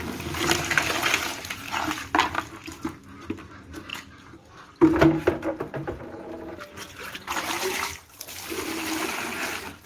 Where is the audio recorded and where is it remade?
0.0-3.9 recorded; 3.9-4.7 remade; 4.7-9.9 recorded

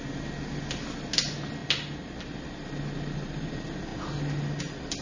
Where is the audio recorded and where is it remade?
0.0-5.0 recorded

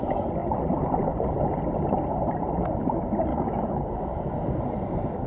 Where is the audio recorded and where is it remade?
0.0-3.3 recorded; 3.3-4.6 remade; 4.6-5.3 recorded

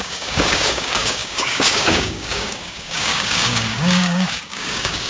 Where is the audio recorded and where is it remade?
0.0-5.1 remade